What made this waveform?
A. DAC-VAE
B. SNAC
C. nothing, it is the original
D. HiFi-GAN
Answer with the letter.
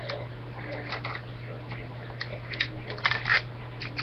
C